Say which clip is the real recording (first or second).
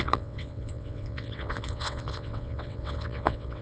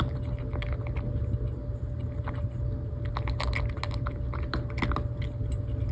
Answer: second